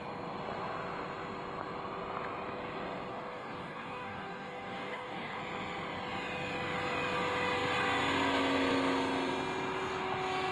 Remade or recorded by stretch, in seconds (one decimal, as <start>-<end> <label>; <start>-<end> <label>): 0.0-3.1 recorded; 3.1-5.4 remade; 5.4-10.5 recorded